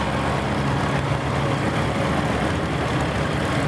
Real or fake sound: real